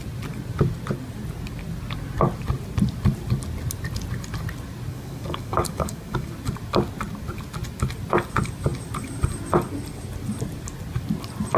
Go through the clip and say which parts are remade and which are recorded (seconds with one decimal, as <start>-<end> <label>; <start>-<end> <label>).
0.0-4.9 recorded; 4.9-6.3 remade; 6.3-11.6 recorded